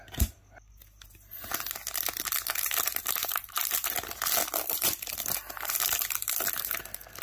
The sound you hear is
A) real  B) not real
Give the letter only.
A